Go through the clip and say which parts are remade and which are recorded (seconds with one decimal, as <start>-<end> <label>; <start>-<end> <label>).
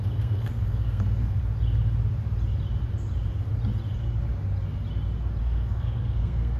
0.0-1.4 remade; 1.4-5.4 recorded; 5.4-6.6 remade